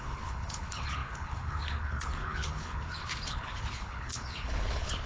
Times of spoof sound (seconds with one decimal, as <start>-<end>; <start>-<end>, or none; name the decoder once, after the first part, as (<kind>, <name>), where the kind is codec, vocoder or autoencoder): 0.0-5.1 (codec, HILCodec)